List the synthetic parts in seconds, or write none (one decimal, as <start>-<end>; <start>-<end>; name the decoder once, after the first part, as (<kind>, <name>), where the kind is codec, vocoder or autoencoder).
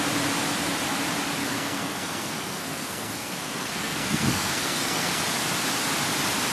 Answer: 1.4-5.2 (codec, SNAC)